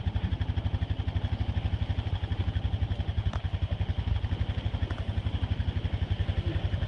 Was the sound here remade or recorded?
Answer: recorded